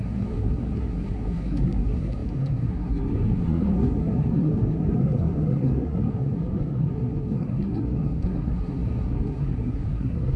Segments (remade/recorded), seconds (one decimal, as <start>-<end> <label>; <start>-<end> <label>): 0.0-10.4 remade